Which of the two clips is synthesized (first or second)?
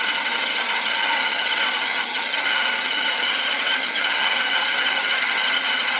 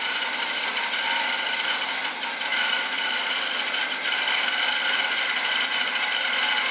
first